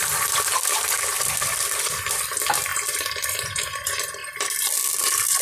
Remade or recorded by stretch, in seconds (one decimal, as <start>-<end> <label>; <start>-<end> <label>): 0.0-2.7 remade; 2.7-3.3 recorded; 3.3-4.2 remade; 4.2-5.0 recorded; 5.0-5.4 remade